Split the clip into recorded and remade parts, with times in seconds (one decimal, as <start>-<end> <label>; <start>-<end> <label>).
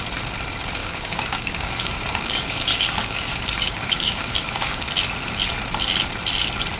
0.0-0.8 recorded; 0.8-4.9 remade; 4.9-6.8 recorded